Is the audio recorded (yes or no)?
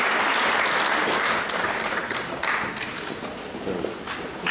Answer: yes